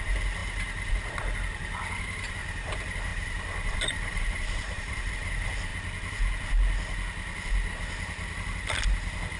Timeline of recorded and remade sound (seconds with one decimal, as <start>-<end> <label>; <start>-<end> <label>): 0.0-3.1 recorded; 3.1-5.1 remade; 5.1-9.4 recorded